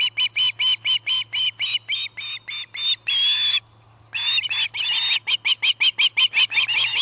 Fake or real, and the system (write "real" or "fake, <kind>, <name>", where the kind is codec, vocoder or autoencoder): real